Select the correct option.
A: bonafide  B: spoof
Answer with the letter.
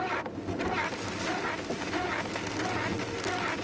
A